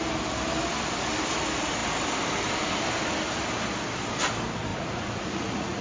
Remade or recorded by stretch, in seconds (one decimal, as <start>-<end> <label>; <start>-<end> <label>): 0.0-4.7 recorded; 4.7-5.8 remade